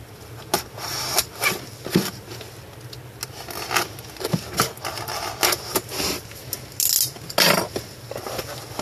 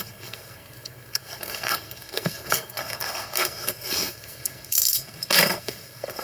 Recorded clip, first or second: first